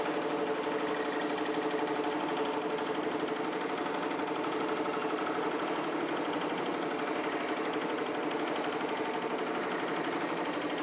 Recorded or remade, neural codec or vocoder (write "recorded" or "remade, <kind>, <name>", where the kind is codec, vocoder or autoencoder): recorded